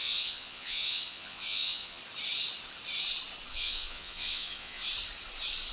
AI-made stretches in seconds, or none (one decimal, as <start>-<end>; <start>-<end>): 0.0-2.0; 3.5-4.8